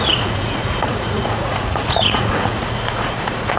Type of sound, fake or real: fake